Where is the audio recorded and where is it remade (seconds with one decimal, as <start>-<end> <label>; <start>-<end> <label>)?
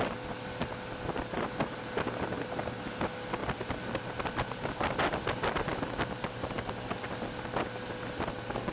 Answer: 0.0-8.7 recorded